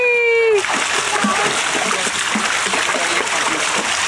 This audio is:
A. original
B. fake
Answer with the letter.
A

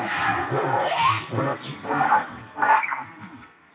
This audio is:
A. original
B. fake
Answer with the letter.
B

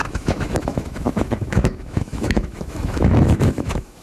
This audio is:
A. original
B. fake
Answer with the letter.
B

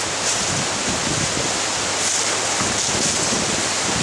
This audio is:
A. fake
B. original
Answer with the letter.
A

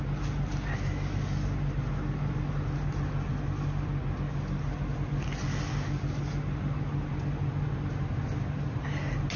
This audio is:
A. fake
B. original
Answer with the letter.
B